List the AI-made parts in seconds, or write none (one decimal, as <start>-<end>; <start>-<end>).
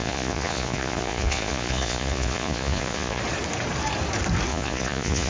0.0-3.2; 4.5-5.3